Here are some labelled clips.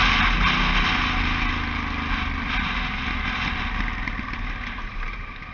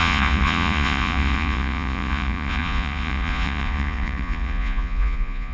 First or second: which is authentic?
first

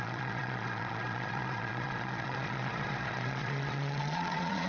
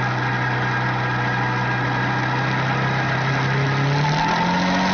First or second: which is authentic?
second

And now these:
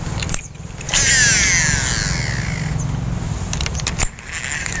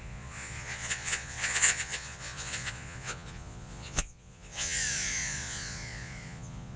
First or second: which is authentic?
first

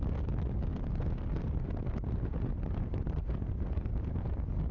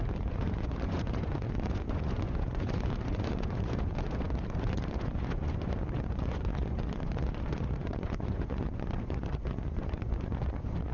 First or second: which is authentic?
first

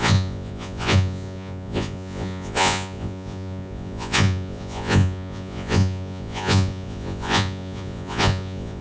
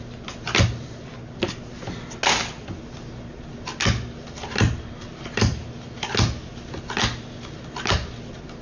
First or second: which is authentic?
second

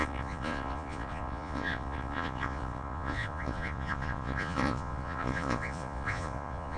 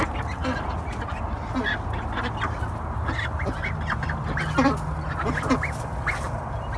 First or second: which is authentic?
second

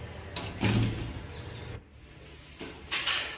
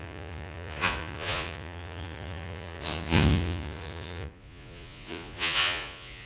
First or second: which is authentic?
first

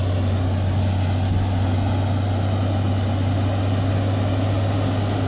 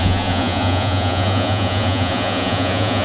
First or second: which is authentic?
first